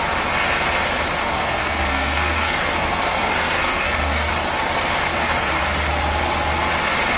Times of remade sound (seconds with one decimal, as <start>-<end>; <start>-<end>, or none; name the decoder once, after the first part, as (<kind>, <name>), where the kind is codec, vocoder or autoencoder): 1.2-4.3 (codec, SNAC); 5.1-5.6